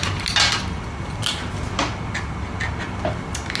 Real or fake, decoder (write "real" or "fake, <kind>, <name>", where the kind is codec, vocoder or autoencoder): real